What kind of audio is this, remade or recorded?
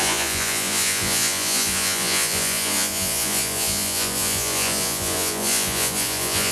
remade